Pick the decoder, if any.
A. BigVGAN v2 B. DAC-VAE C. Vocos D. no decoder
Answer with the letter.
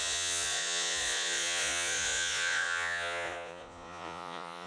C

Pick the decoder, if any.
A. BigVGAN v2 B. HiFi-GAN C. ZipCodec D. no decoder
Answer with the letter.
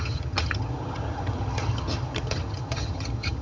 B